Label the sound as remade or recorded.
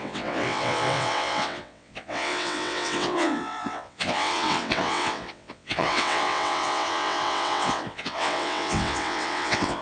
remade